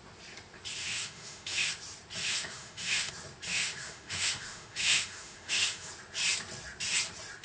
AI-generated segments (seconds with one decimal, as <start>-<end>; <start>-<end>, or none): 0.8-1.7; 2.2-3.1; 3.5-5.9